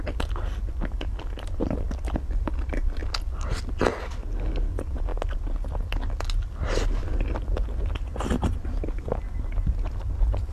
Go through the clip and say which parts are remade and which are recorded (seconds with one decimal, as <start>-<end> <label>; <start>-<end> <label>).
0.0-10.5 recorded